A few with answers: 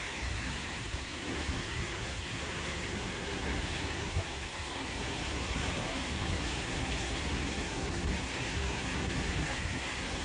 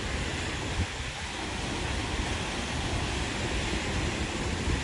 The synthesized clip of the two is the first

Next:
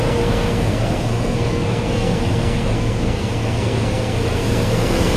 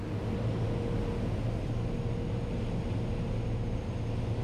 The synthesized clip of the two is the first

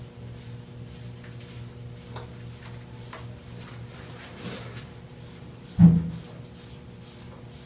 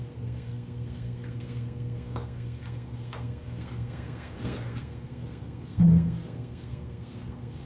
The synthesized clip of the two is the second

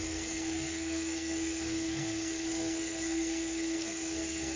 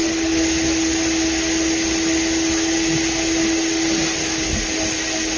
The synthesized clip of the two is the first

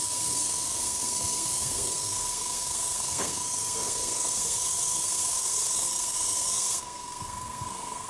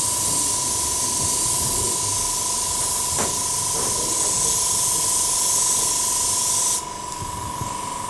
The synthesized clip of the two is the first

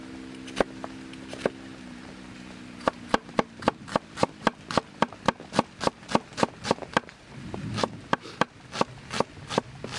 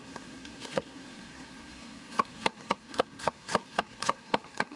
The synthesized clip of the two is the second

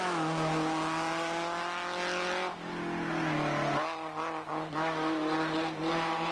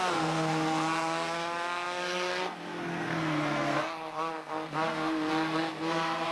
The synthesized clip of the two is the second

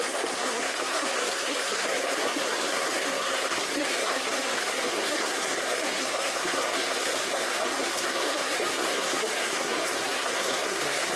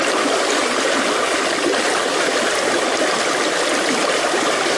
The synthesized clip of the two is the first